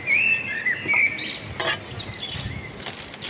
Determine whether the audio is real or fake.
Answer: real